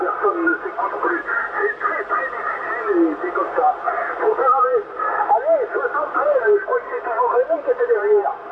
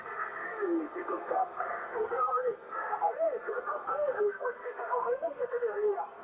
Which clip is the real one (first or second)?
first